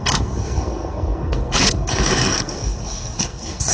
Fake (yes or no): yes